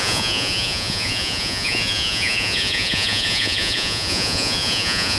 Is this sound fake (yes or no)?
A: yes